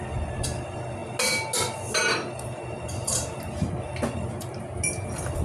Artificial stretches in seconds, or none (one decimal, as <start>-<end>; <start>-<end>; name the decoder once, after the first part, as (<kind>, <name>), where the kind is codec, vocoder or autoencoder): none